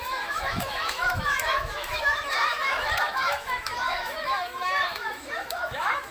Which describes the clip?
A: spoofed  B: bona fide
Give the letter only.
A